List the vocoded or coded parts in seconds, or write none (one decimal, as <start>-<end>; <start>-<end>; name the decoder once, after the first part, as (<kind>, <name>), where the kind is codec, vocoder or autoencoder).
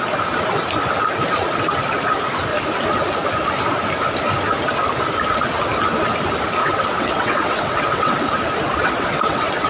6.6-8.2 (vocoder, WaveNeXt); 8.7-9.7